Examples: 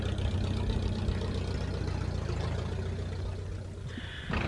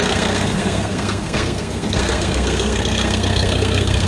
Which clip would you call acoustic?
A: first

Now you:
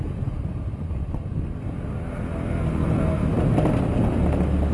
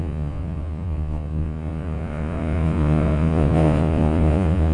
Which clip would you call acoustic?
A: first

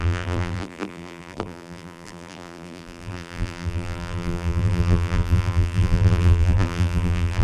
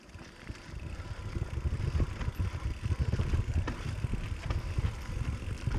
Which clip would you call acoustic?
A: second